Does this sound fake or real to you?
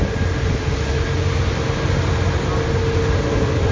real